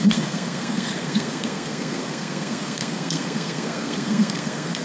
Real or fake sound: fake